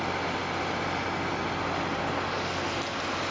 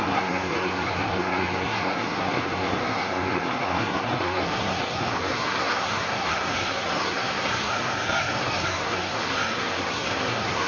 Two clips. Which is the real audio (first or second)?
first